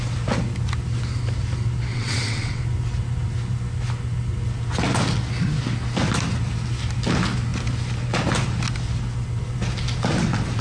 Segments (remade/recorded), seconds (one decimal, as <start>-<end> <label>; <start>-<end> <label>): 0.0-1.9 recorded; 1.9-2.6 remade; 2.6-10.6 recorded